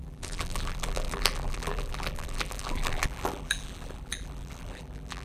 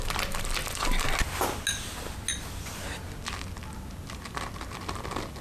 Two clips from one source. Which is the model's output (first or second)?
first